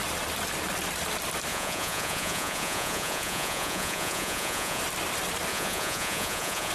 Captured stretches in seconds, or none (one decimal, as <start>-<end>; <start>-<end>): 0.0-1.5; 4.8-5.5

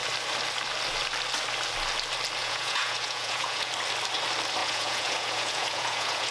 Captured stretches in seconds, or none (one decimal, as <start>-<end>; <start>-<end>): 0.0-2.4; 3.7-4.6

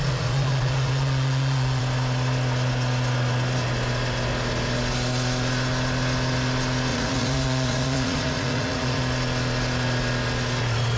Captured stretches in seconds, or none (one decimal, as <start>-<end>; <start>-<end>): 1.8-6.9; 9.0-11.0

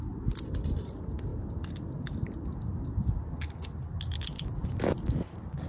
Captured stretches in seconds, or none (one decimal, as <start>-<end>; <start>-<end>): 0.0-5.7

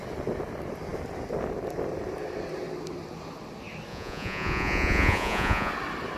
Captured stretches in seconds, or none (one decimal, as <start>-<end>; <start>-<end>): 0.0-3.9; 5.7-6.2